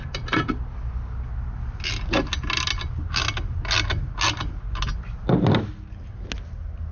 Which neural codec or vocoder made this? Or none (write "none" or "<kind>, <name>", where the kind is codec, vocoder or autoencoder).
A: none